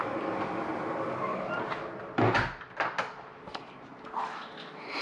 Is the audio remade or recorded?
recorded